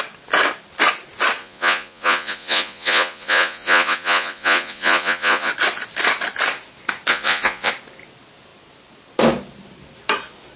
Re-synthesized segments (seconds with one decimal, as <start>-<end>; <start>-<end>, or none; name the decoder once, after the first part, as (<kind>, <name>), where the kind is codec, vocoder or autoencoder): 1.4-5.5 (vocoder, Vocos); 7.1-7.7